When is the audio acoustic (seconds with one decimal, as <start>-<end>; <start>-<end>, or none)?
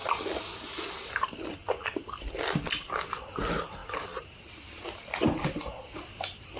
0.0-6.6